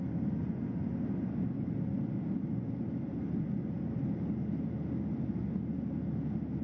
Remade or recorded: recorded